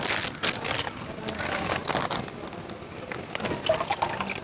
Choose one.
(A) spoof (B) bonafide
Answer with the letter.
B